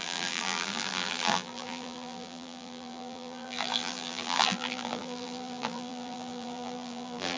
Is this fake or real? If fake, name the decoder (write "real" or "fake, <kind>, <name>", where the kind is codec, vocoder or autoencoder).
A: fake, vocoder, BigVGAN v2